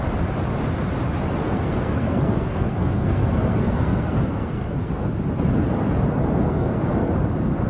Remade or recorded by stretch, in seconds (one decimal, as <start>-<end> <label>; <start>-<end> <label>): 0.0-1.4 recorded; 1.4-5.0 remade; 5.0-6.4 recorded; 6.4-7.1 remade; 7.1-7.7 recorded